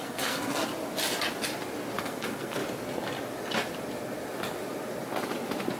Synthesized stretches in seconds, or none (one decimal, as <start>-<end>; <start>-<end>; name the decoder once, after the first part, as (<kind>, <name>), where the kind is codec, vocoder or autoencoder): 0.0-0.6 (codec, SNAC); 2.0-2.6